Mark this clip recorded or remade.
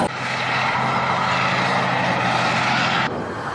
recorded